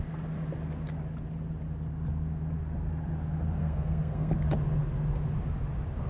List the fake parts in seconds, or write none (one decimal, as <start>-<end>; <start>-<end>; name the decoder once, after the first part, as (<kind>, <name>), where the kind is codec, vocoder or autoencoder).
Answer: 3.6-4.3 (codec, SNAC)